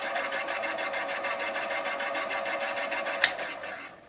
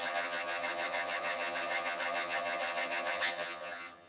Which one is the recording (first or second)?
first